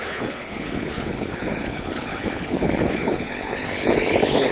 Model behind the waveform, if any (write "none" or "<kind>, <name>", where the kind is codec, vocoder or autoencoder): codec, HILCodec